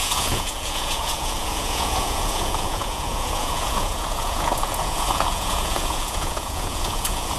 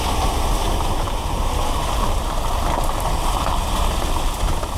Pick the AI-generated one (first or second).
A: first